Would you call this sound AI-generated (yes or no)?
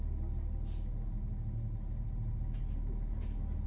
no